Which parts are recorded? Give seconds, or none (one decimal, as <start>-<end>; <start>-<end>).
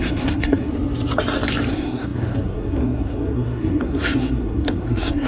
0.7-1.7